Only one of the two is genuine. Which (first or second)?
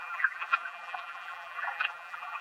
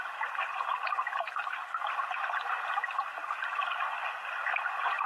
second